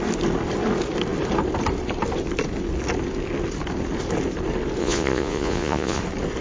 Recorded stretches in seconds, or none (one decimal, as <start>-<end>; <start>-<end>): 0.0-4.8; 6.0-6.4